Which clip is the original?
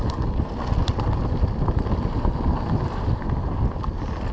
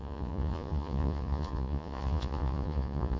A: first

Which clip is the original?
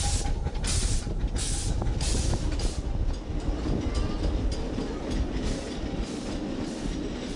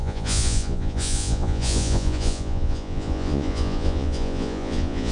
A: first